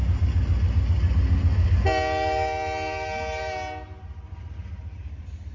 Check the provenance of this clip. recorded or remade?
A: recorded